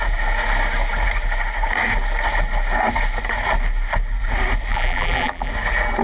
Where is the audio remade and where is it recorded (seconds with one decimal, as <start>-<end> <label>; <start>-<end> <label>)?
0.0-4.7 recorded; 4.7-5.5 remade; 5.5-6.0 recorded